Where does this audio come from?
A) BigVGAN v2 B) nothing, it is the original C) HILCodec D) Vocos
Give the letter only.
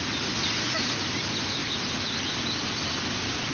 B